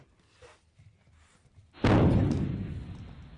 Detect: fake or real real